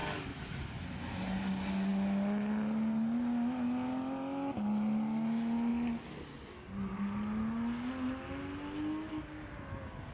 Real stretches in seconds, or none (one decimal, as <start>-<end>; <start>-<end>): 0.0-10.1